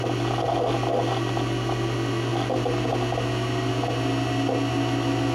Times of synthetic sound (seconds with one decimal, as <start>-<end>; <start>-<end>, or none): none

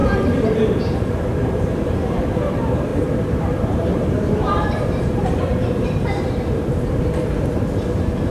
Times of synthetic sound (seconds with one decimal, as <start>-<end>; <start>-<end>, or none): 1.4-2.5; 2.9-7.0

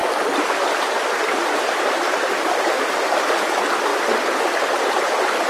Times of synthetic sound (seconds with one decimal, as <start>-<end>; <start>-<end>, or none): 3.3-3.9; 4.6-5.5

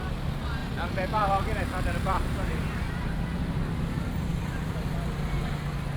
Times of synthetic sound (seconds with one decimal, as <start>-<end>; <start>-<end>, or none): 0.6-3.7; 4.3-4.9

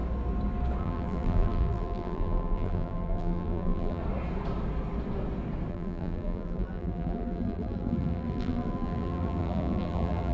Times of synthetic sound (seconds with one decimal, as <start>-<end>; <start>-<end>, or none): 0.8-4.0; 5.7-10.3

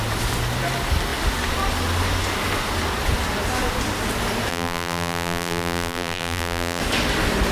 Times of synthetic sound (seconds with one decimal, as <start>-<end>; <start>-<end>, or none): 4.5-6.8